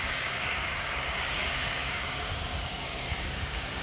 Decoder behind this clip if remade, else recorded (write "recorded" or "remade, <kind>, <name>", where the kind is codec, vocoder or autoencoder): remade, codec, DAC